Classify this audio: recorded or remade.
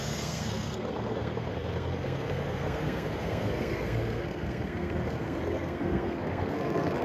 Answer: remade